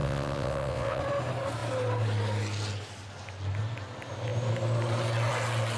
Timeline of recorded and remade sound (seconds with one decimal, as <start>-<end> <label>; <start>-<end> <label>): 0.0-1.0 remade; 1.0-5.8 recorded